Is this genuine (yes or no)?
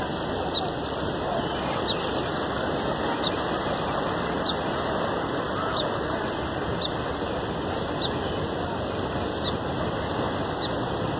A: yes